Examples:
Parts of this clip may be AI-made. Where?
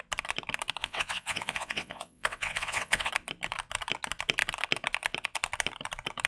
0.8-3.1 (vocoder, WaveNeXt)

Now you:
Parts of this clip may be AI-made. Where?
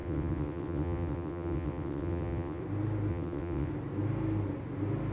0.0-2.6 (vocoder, WaveNeXt); 3.1-3.7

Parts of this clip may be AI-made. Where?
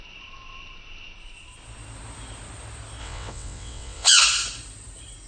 3.0-4.2 (vocoder, WaveNeXt)